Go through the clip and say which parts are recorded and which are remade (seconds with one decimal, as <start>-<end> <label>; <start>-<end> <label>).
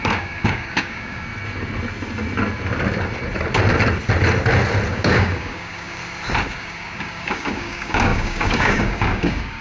0.0-1.3 remade; 1.3-4.9 recorded; 4.9-6.0 remade; 6.0-6.5 recorded; 6.5-9.6 remade